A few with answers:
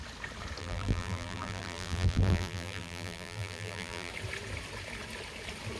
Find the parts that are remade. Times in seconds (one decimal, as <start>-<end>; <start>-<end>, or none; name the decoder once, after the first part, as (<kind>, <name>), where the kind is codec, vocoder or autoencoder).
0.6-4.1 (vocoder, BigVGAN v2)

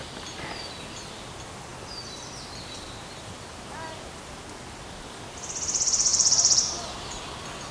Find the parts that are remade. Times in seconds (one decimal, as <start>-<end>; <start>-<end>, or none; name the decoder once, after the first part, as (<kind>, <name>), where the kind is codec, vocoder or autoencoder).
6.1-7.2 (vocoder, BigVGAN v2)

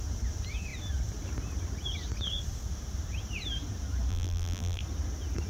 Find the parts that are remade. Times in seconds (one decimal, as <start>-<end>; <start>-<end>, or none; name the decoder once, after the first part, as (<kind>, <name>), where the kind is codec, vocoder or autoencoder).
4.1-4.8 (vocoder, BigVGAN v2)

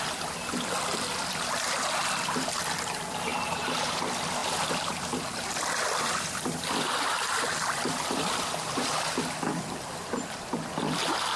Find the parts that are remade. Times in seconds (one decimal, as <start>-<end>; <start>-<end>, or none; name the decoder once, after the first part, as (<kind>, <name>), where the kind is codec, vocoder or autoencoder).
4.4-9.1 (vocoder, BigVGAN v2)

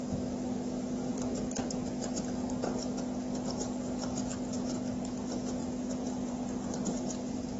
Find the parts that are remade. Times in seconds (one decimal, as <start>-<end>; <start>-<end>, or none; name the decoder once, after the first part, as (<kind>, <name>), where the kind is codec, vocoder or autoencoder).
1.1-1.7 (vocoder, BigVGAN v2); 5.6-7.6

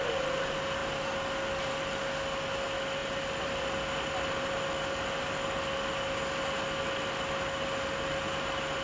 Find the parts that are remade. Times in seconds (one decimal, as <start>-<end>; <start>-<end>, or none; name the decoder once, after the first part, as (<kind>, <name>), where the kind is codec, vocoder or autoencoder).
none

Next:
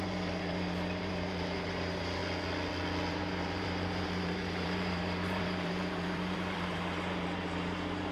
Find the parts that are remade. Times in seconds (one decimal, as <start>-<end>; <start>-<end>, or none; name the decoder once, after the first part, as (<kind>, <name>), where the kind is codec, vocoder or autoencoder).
0.0-2.2 (vocoder, BigVGAN v2); 3.1-8.1